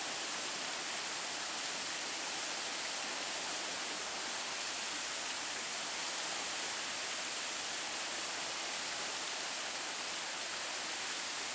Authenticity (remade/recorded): recorded